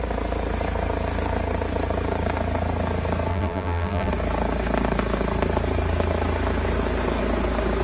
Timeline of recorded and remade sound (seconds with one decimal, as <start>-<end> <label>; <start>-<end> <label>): 0.0-3.3 recorded; 3.3-4.1 remade; 4.1-7.8 recorded